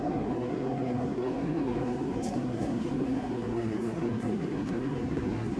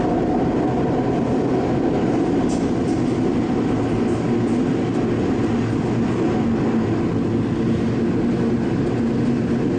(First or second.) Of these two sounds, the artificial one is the first